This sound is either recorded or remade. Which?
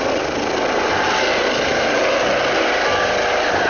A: recorded